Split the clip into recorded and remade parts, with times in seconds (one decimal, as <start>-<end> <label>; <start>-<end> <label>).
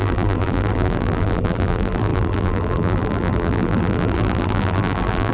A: 0.0-5.3 remade